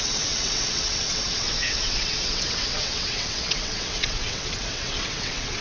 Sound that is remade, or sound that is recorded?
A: remade